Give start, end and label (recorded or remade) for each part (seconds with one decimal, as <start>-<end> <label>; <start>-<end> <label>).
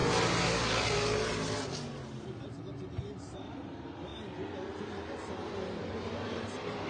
0.0-2.7 recorded; 2.7-4.1 remade; 4.1-5.5 recorded; 5.5-6.9 remade